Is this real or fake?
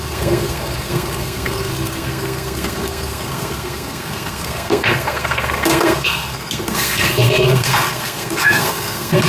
fake